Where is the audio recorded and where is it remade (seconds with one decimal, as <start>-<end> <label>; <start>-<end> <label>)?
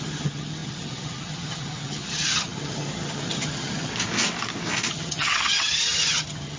0.0-3.9 remade; 3.9-4.9 recorded; 4.9-6.6 remade